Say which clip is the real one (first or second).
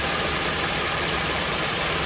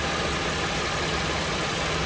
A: second